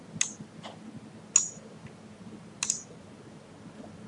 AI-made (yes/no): no